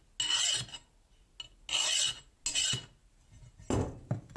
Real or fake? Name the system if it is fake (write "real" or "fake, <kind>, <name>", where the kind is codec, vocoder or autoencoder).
real